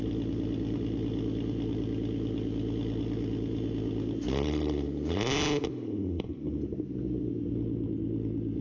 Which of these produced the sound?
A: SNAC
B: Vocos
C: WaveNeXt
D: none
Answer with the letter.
D